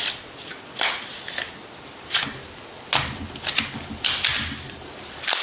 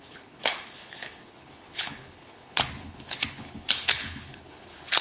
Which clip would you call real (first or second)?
first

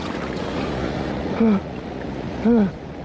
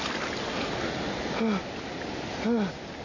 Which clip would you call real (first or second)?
second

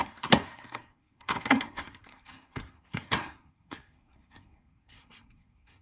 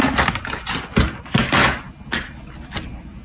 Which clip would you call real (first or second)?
second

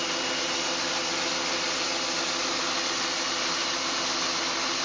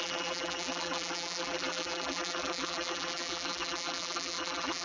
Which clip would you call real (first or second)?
first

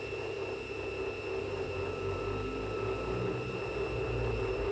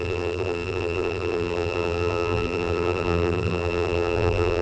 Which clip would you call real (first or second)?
first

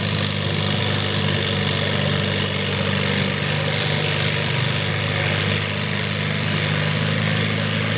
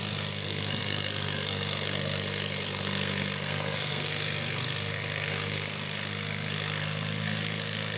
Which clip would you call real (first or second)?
first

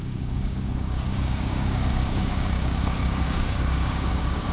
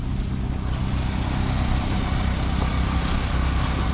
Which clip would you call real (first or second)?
second